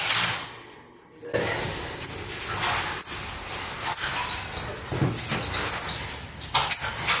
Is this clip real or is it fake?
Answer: real